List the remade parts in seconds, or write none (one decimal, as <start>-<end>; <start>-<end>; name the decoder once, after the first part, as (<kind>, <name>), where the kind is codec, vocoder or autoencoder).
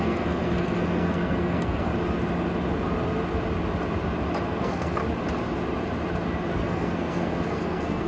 0.0-1.9 (codec, SNAC); 4.6-5.0; 6.5-8.1